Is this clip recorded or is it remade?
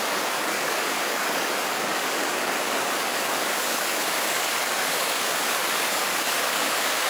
remade